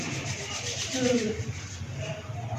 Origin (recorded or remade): remade